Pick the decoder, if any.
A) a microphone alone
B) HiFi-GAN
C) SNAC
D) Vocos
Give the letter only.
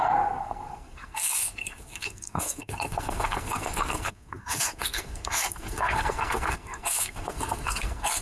C